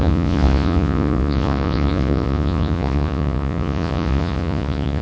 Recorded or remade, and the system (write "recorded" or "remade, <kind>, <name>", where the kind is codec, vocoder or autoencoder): remade, vocoder, Vocos